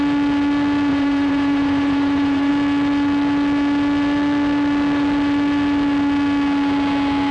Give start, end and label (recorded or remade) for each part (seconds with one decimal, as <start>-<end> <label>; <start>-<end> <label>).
0.0-0.9 recorded; 0.9-2.5 remade; 2.5-7.3 recorded